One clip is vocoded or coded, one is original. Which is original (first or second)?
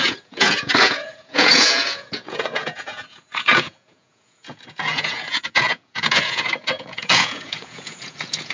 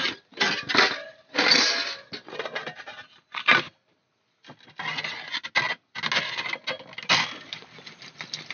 second